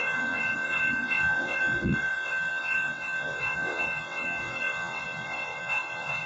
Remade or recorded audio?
remade